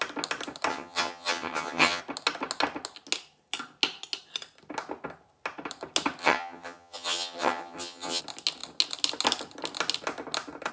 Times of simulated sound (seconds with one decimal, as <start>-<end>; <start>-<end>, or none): 0.7-2.0; 6.2-8.2